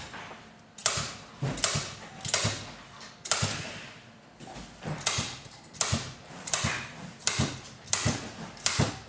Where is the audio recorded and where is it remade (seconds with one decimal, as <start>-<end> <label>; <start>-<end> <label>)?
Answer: 0.0-9.1 recorded